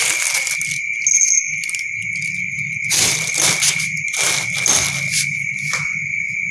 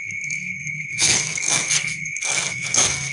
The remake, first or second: second